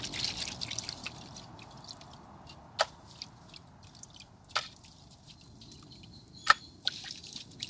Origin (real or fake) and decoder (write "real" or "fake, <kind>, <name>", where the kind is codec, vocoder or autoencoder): real